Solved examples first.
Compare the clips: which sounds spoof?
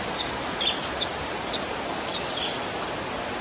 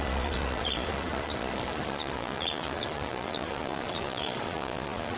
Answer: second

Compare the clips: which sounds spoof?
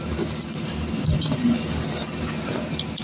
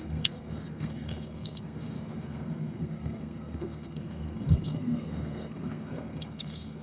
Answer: second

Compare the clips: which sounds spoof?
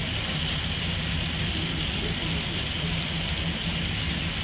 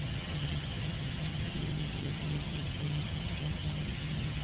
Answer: second